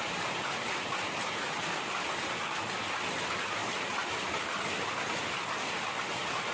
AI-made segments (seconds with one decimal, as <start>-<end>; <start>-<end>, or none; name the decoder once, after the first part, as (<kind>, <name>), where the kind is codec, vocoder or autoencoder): none